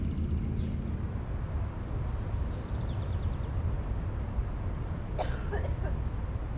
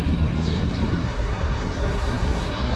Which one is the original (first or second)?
first